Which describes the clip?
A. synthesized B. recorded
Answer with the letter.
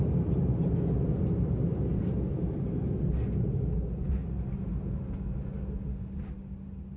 B